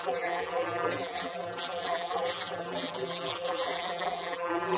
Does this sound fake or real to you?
fake